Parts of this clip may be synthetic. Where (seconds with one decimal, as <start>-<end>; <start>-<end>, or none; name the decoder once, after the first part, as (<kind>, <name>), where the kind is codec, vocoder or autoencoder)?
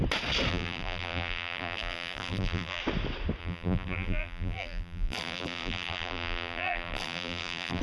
0.5-2.8 (vocoder, BigVGAN v2); 3.4-7.8